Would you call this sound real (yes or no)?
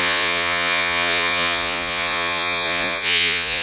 no